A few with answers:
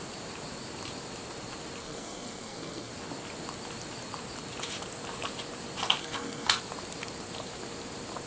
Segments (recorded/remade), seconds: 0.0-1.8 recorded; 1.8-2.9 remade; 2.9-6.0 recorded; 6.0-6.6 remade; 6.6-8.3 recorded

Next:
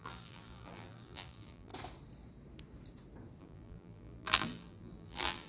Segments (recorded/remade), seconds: 0.0-1.7 remade; 1.7-3.4 recorded; 3.4-5.5 remade

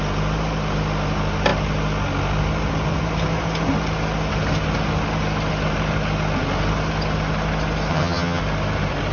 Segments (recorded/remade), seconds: 0.0-7.9 recorded; 7.9-8.4 remade; 8.4-9.1 recorded

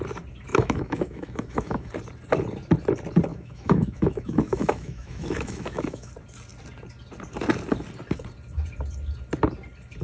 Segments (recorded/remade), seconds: 0.0-0.5 recorded; 0.5-1.9 remade; 1.9-3.3 recorded; 3.3-6.1 remade; 6.1-10.0 recorded